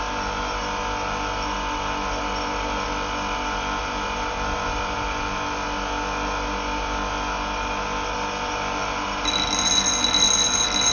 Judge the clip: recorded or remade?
recorded